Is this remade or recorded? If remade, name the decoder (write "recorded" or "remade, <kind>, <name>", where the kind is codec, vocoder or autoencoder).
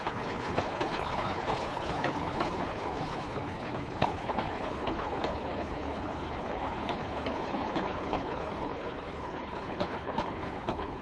remade, codec, HILCodec